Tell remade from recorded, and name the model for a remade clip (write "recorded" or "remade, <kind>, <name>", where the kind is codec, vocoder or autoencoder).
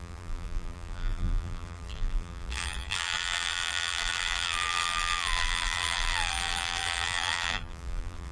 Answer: remade, vocoder, BigVGAN v2